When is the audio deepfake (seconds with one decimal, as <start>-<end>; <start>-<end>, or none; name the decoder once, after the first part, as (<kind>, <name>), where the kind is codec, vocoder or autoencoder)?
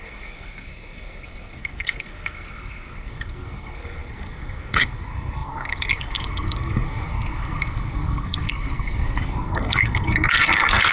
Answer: 0.0-10.9 (codec, SNAC)